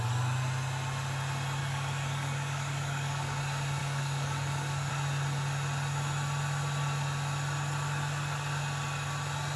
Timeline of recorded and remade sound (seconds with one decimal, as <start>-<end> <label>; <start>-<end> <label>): 0.0-1.6 recorded; 1.6-3.4 remade; 3.4-3.8 recorded; 3.8-4.9 remade; 4.9-9.6 recorded